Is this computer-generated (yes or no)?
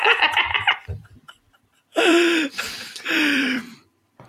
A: yes